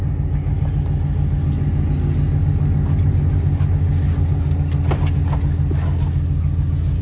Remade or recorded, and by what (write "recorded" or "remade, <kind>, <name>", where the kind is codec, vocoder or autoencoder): recorded